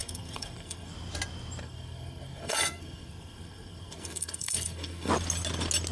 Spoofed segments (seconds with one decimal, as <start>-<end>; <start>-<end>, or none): 0.0-0.9; 1.6-5.1